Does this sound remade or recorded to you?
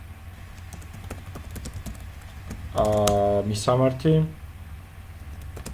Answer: recorded